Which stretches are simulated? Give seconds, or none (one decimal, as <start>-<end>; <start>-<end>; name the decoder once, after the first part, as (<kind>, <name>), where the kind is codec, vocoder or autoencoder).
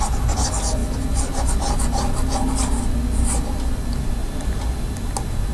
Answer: none